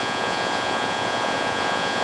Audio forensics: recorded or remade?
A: remade